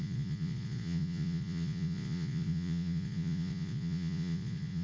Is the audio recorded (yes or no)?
no